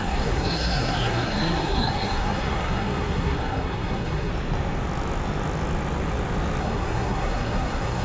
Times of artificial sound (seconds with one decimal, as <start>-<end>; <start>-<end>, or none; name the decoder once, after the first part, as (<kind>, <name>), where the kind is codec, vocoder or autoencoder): 0.0-4.3 (codec, SNAC); 6.6-8.0